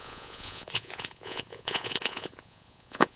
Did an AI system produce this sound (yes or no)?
yes